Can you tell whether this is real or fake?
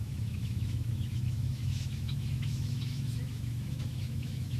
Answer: fake